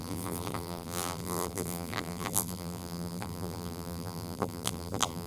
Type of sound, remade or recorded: remade